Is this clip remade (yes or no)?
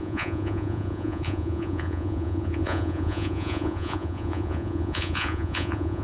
yes